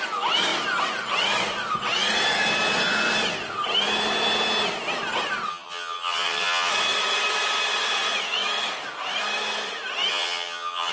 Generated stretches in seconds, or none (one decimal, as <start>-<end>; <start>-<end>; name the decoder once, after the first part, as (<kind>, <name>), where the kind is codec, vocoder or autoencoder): 5.5-6.7 (vocoder, HiFi-GAN); 10.1-10.9